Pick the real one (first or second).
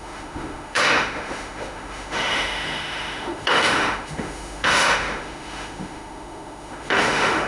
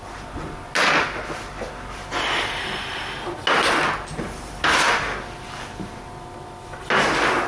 second